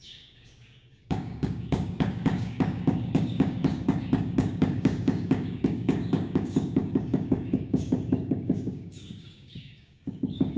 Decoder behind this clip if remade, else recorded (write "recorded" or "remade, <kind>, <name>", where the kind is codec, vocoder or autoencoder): remade, codec, DAC